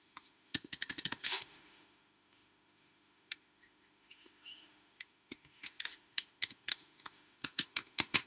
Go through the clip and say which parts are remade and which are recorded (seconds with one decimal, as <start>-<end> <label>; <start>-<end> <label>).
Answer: 0.0-8.3 remade